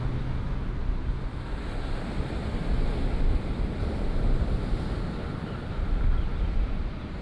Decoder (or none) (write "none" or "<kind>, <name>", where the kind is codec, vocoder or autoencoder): none